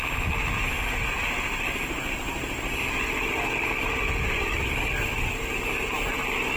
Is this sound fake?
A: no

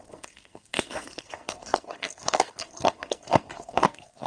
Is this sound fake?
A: yes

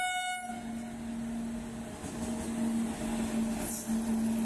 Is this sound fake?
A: no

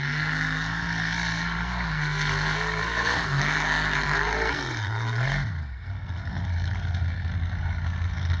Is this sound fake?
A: yes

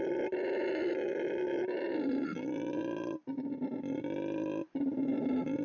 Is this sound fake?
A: no